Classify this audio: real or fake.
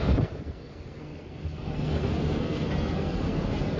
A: fake